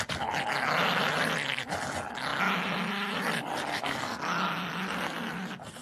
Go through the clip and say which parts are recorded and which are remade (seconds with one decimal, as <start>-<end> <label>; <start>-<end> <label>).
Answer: 0.0-3.7 recorded; 3.7-4.2 remade; 4.2-5.8 recorded